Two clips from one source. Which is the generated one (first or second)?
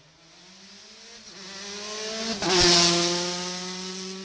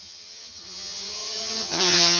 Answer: second